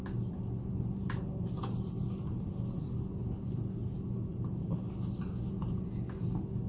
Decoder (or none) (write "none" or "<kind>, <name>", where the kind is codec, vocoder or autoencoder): none